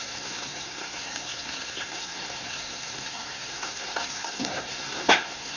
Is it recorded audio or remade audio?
remade